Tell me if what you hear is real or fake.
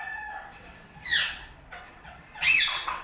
fake